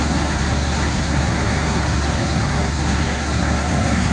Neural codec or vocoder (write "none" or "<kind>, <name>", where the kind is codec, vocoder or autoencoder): codec, SNAC